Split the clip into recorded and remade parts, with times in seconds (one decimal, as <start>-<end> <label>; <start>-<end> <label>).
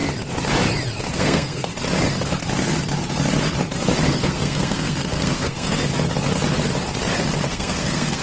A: 0.0-1.1 recorded; 1.1-1.7 remade; 1.7-4.2 recorded; 4.2-5.9 remade; 5.9-7.5 recorded; 7.5-8.2 remade